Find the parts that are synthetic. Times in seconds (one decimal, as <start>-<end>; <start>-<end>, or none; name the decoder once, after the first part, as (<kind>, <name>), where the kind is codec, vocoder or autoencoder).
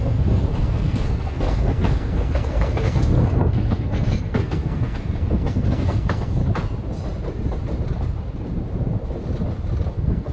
0.0-6.4 (codec, SNAC); 9.9-10.3